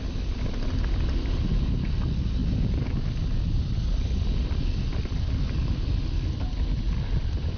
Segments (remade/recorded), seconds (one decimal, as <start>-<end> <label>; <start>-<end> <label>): 0.0-7.6 recorded